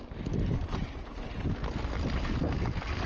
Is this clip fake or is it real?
real